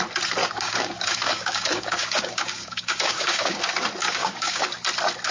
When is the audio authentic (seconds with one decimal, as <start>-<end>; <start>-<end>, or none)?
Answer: 0.0-0.4; 3.6-4.0; 4.7-5.3